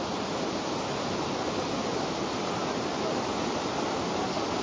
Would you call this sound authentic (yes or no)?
yes